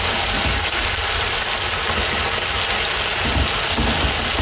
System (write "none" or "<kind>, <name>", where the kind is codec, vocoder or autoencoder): none